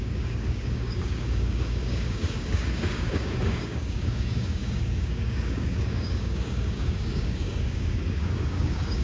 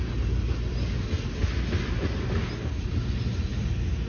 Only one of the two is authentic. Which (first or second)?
second